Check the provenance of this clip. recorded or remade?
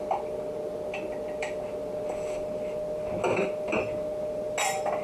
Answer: recorded